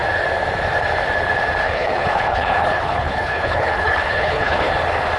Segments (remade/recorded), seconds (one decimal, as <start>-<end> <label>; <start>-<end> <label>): 0.0-1.6 recorded; 1.6-4.7 remade; 4.7-5.2 recorded